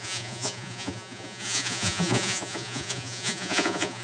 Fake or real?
fake